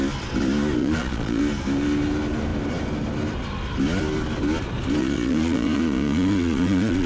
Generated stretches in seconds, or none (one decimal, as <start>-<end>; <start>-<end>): 0.8-1.4; 5.0-7.1